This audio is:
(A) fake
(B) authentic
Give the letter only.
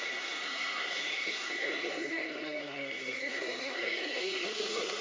A